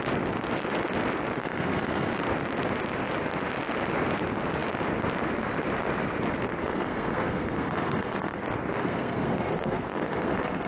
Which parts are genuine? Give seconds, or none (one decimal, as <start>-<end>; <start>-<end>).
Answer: 0.0-1.4; 2.1-6.6; 8.4-8.8